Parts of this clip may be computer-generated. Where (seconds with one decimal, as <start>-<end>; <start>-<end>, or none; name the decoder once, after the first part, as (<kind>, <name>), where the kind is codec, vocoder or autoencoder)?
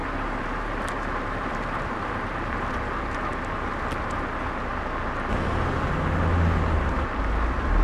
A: 0.0-4.2 (vocoder, BigVGAN v2)